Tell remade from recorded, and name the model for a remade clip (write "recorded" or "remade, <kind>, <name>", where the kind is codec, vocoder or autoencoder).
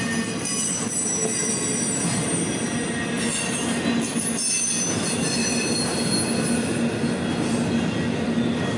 recorded